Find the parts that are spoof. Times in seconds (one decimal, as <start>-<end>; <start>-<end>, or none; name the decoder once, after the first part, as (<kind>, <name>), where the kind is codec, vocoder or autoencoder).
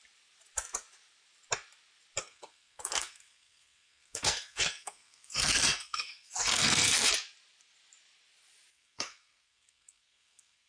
2.2-7.1 (codec, SNAC); 8.7-10.7